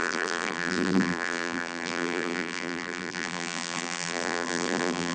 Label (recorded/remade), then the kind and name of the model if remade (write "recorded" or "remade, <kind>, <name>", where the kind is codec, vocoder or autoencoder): remade, vocoder, BigVGAN v2